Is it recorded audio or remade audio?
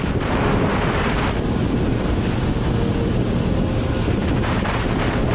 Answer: recorded